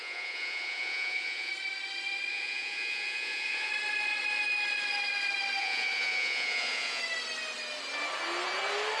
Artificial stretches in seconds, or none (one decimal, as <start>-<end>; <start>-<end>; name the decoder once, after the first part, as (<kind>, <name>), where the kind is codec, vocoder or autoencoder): 0.0-1.5 (vocoder, Vocos); 2.3-3.7; 5.6-7.0